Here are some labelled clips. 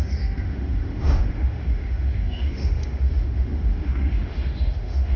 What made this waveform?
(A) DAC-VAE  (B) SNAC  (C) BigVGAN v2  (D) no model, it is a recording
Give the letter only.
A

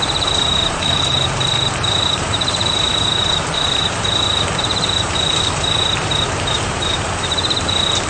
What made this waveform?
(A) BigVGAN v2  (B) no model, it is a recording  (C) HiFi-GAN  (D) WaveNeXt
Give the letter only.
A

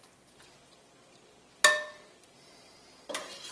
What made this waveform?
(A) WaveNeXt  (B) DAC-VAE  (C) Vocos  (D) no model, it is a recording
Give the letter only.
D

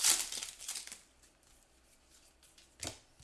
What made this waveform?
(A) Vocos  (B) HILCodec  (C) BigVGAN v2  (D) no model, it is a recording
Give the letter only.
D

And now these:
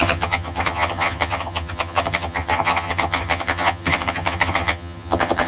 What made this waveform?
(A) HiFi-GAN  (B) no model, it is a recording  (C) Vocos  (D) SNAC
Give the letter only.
A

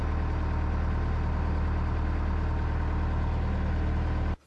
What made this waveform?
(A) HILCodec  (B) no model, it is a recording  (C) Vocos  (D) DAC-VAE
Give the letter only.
B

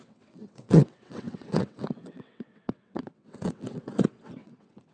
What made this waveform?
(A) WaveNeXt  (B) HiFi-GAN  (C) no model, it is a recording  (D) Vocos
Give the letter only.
A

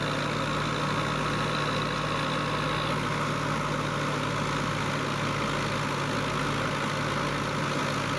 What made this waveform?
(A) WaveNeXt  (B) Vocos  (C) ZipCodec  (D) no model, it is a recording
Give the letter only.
D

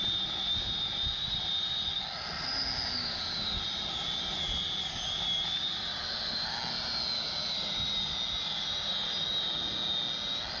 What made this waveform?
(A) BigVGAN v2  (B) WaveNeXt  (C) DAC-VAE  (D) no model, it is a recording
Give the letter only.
D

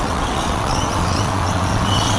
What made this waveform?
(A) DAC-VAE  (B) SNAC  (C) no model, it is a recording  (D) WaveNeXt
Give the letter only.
D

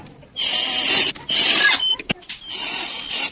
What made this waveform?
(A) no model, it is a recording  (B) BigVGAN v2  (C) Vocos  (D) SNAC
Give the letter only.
A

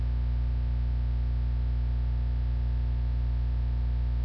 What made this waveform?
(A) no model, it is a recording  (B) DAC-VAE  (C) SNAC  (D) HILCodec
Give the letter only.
A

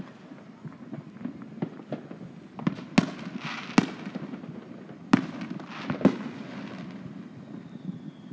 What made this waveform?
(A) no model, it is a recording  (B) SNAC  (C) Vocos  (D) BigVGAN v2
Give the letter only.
A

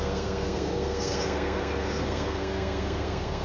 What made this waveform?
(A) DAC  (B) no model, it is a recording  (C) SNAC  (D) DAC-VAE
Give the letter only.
C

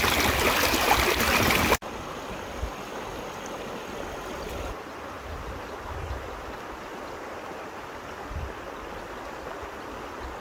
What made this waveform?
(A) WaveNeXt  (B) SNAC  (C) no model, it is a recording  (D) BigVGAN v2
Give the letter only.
C